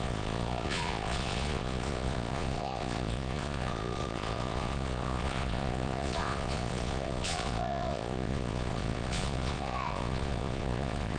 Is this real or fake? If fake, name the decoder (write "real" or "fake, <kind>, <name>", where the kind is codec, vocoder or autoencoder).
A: fake, vocoder, Vocos